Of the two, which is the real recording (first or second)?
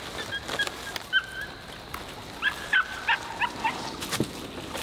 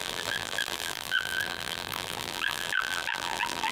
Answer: first